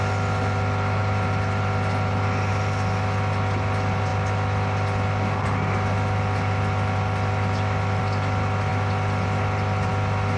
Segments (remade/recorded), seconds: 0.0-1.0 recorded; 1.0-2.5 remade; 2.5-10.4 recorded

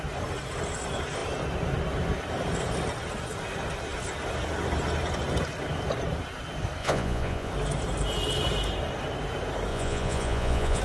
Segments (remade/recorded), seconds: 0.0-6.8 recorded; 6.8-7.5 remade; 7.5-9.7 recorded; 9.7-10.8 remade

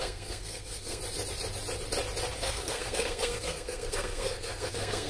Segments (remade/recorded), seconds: 0.0-1.0 remade; 1.0-2.4 recorded; 2.4-5.1 remade